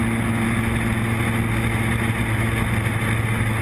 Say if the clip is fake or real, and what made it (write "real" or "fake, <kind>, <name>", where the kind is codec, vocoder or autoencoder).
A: real